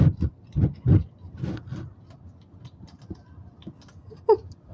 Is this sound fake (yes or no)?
no